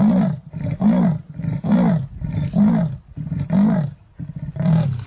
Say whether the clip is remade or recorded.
recorded